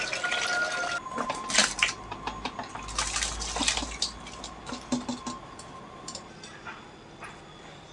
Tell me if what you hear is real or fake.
real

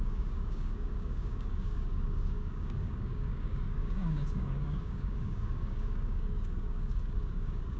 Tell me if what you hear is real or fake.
fake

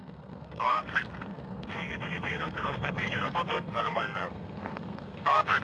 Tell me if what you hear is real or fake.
fake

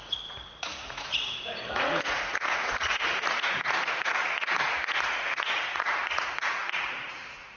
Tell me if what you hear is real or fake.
fake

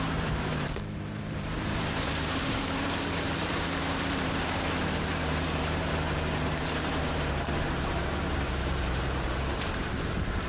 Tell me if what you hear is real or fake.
fake